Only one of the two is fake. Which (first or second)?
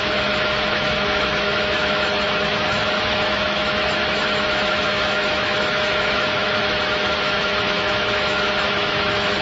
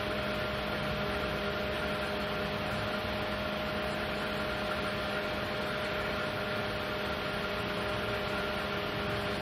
first